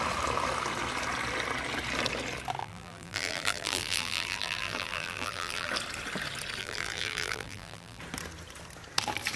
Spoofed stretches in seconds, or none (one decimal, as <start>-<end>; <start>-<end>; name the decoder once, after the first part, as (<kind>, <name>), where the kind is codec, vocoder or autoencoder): 2.6-5.7 (vocoder, BigVGAN v2); 6.6-8.0